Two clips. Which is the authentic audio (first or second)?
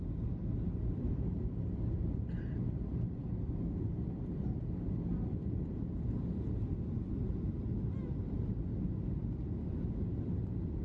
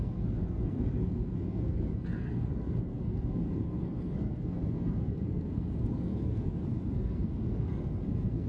first